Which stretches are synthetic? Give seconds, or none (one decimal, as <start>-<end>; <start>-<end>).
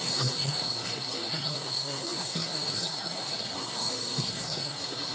0.0-5.1